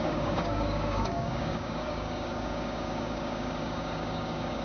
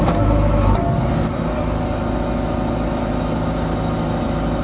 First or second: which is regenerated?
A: first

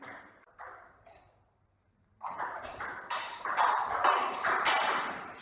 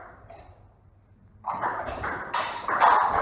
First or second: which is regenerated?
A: first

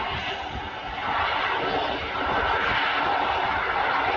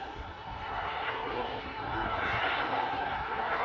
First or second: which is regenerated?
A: second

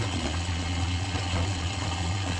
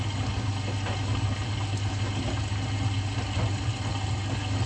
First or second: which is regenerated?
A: first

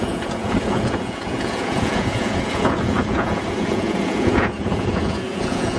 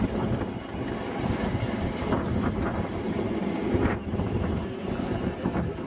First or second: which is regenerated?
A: first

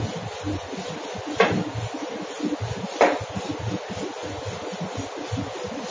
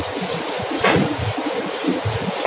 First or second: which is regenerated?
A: second